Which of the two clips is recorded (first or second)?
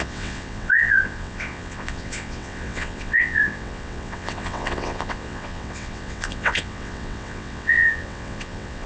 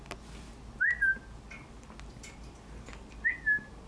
second